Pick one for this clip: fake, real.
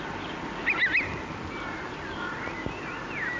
real